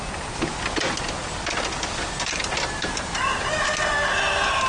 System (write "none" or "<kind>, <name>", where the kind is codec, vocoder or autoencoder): none